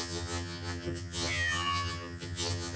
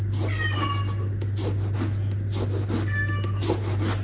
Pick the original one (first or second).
second